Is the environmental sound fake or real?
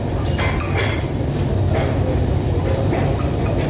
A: fake